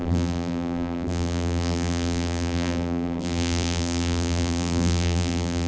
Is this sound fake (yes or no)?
yes